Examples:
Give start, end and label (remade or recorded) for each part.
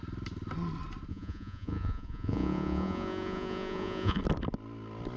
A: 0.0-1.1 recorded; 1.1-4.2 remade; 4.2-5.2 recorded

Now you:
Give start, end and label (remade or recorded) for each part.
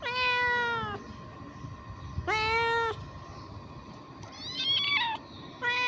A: 0.0-5.9 recorded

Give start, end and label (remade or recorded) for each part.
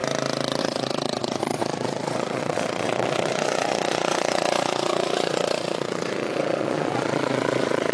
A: 0.0-0.6 recorded; 0.6-7.9 remade